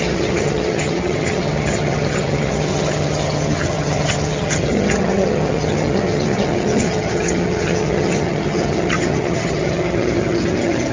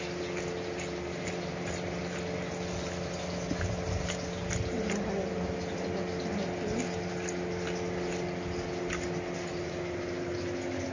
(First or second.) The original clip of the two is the second